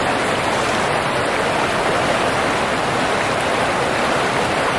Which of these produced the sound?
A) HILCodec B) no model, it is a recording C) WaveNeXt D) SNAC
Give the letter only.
B